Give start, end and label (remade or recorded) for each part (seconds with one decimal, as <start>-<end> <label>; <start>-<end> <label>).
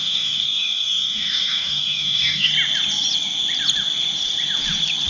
0.0-2.5 remade; 2.5-5.1 recorded